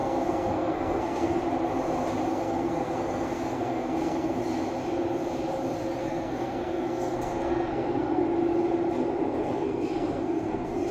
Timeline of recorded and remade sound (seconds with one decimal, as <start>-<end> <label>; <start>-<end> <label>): 0.0-1.4 remade; 1.4-2.3 recorded; 2.3-4.4 remade; 4.4-6.0 recorded; 6.0-8.2 remade; 8.2-9.3 recorded; 9.3-10.9 remade